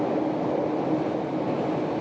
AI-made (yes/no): no